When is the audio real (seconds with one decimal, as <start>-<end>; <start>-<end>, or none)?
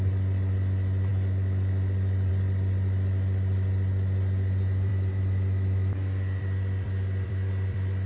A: 0.0-1.1; 2.3-4.9